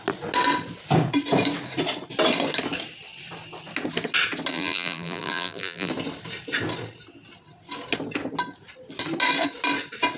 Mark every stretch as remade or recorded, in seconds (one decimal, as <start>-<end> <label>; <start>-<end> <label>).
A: 0.0-4.5 recorded; 4.5-5.9 remade; 5.9-10.2 recorded